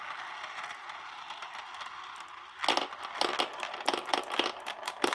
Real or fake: real